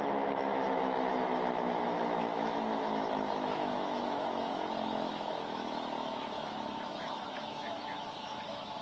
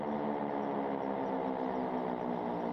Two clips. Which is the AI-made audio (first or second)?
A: first